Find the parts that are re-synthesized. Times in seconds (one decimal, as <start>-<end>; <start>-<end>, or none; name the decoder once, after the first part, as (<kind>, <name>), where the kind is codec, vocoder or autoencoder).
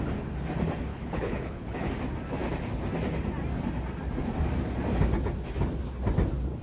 0.9-1.9 (codec, HILCodec)